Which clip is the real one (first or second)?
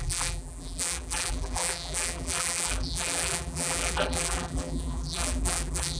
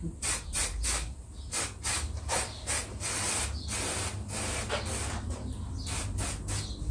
second